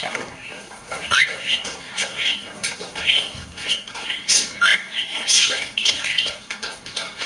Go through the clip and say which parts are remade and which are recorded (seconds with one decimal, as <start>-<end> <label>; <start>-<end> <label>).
0.0-7.3 remade